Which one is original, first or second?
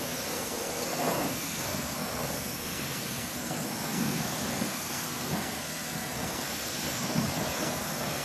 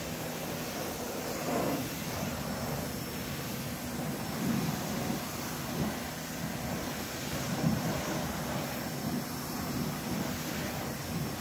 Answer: second